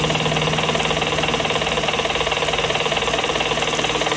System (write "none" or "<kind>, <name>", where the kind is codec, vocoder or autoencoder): none